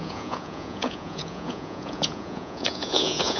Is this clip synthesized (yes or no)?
yes